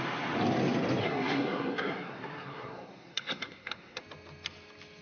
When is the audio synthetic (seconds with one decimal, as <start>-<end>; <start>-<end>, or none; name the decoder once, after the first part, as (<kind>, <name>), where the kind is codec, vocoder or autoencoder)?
1.0-4.0 (codec, SNAC)